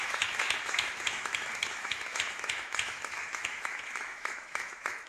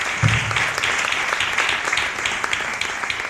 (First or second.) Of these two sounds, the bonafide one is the second